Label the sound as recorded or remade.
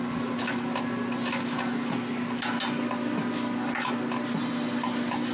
recorded